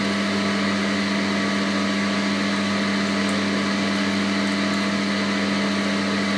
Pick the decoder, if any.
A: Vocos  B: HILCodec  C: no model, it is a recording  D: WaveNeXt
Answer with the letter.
C